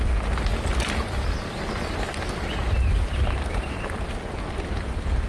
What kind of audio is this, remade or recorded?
recorded